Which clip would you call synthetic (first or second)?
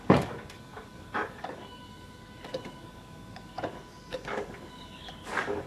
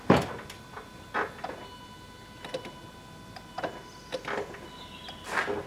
first